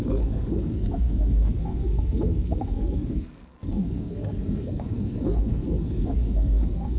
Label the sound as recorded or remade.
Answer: remade